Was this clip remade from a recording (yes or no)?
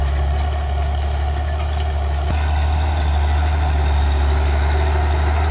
no